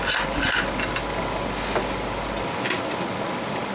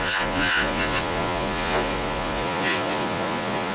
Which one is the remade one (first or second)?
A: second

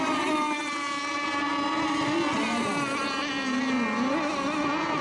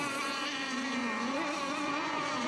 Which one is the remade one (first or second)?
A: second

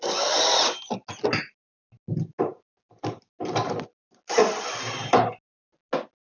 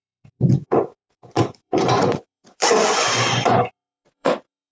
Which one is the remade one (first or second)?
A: second